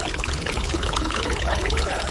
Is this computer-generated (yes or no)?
yes